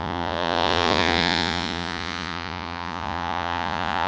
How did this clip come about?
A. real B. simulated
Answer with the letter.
B